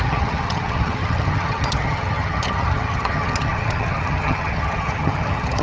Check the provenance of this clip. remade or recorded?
remade